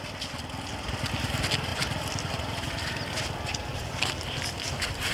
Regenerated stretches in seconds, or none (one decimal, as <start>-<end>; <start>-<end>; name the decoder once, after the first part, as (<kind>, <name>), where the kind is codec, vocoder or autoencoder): 1.7-5.1 (vocoder, BigVGAN v2)